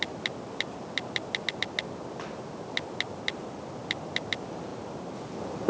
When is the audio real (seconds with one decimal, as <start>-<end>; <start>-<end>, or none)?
0.0-5.7